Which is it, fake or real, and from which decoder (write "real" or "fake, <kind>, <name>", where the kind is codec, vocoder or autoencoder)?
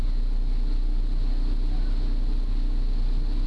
real